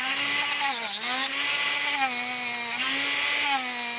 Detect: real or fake real